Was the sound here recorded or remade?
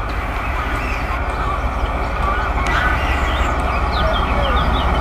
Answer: recorded